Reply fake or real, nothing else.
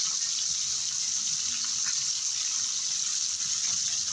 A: real